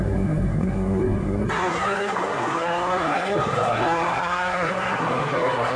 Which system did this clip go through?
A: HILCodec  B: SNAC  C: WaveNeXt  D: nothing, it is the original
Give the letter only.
B